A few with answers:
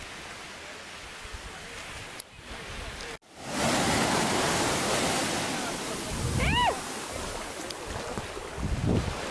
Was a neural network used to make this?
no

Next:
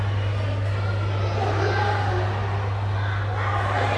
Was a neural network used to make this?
no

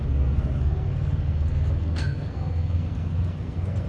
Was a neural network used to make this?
yes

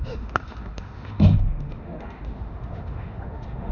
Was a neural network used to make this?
yes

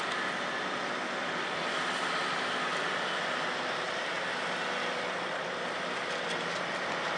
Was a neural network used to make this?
no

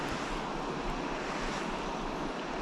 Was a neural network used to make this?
no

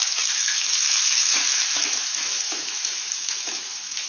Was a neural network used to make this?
yes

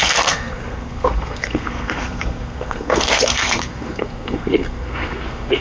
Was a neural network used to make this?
yes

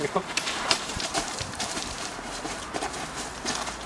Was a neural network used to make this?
yes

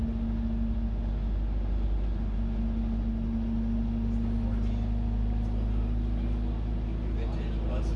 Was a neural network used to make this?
no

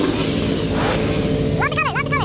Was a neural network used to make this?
no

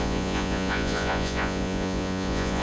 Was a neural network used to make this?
yes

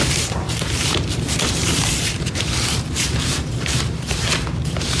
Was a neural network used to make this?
yes